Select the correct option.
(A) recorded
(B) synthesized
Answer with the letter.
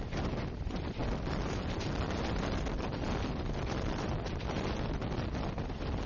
A